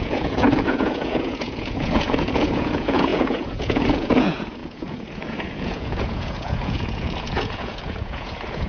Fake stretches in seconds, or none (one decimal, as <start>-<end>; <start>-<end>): 0.0-8.7